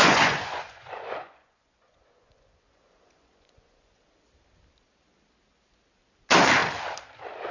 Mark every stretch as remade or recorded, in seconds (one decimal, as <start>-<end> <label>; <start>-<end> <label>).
0.0-4.0 remade; 4.0-7.5 recorded